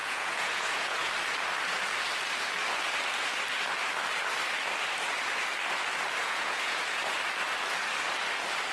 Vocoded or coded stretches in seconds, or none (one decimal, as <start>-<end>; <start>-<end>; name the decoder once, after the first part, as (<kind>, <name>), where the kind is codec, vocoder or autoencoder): 0.0-1.1 (vocoder, Vocos); 6.2-6.8